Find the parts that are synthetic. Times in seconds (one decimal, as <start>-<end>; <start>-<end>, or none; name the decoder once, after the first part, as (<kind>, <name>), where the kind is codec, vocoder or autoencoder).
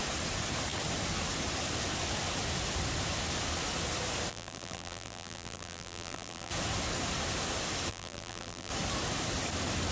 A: 4.3-6.5 (vocoder, BigVGAN v2); 7.9-8.7